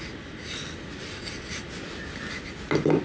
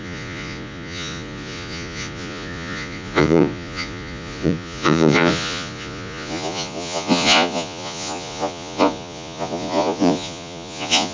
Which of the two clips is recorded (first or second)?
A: first